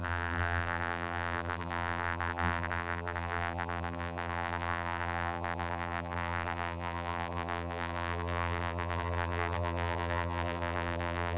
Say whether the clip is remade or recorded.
remade